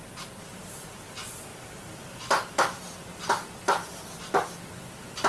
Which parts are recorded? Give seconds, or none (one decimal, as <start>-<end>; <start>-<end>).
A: 0.0-1.5; 4.7-5.3